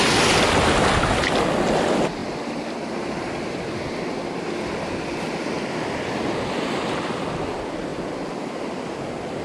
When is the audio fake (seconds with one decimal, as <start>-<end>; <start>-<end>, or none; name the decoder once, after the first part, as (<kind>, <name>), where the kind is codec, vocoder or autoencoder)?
none

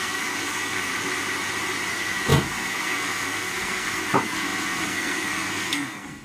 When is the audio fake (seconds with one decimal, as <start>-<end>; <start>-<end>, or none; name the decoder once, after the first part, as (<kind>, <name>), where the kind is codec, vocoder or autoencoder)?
0.0-0.9 (codec, SNAC); 1.9-6.2

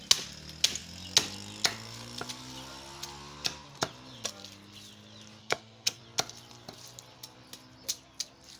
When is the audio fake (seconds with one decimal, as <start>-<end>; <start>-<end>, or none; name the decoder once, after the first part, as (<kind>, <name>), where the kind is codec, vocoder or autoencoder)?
5.4-6.0 (codec, SNAC)

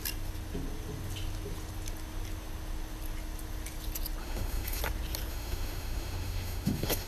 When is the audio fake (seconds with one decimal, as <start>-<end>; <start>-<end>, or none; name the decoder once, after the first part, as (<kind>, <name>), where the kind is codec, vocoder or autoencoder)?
4.2-4.8 (autoencoder, DAC-VAE); 5.3-7.1

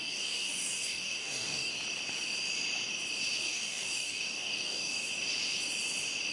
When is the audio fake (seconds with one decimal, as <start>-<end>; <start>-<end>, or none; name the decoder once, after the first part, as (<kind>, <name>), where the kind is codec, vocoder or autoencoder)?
0.0-1.7 (codec, DAC); 3.4-5.1

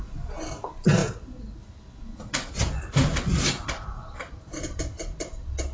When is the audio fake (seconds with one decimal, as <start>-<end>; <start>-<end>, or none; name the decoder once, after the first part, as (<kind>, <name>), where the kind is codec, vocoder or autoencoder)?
3.0-5.3 (vocoder, BigVGAN v2)

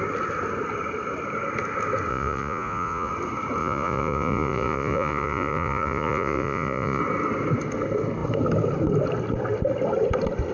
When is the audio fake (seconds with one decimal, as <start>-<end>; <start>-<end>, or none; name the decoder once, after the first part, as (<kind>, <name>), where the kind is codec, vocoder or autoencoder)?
2.1-3.1 (vocoder, Vocos); 3.6-7.0

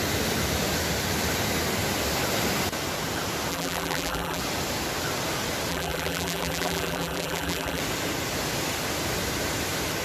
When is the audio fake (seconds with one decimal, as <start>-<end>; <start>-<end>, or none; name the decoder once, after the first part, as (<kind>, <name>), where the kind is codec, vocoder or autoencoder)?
3.5-4.4 (vocoder, BigVGAN v2); 5.7-7.8